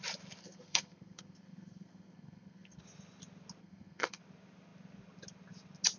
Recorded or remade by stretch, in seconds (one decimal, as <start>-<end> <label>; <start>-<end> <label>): 0.0-0.4 recorded; 0.4-2.8 remade; 2.8-3.6 recorded; 3.6-4.2 remade; 4.2-6.0 recorded